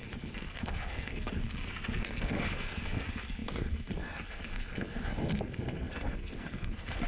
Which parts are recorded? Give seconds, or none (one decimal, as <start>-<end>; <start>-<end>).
none